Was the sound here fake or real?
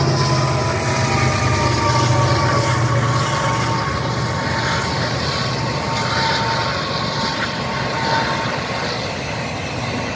real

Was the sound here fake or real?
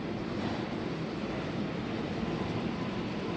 fake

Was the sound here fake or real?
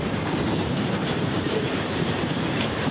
fake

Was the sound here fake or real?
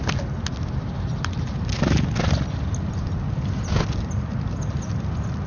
real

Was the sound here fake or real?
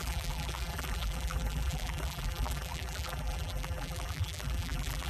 fake